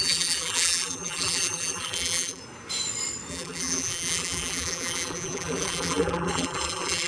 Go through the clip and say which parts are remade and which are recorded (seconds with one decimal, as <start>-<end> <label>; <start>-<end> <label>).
0.0-2.4 remade; 2.4-3.3 recorded; 3.3-7.1 remade